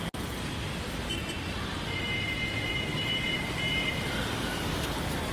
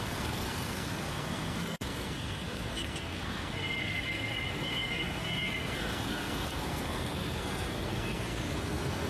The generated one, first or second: second